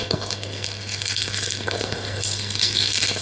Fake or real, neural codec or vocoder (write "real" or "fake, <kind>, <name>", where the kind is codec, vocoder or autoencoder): fake, codec, SNAC